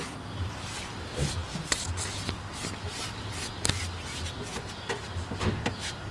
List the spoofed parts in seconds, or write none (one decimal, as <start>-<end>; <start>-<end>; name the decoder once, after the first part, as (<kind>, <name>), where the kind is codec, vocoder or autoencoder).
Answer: none